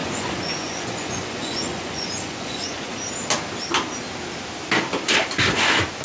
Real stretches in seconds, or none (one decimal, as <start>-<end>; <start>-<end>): 3.1-6.0